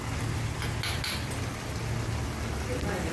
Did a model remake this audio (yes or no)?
no